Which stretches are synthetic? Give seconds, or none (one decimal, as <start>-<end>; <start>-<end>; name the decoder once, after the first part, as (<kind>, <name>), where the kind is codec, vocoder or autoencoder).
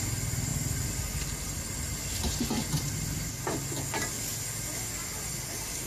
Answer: none